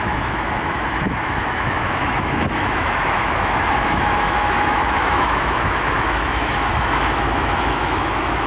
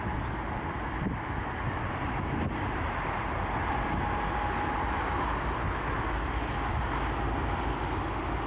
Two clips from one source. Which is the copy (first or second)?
first